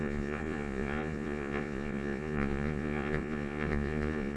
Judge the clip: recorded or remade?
remade